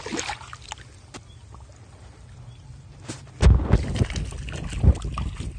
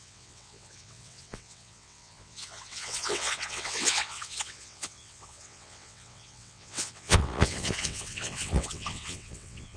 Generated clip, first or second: second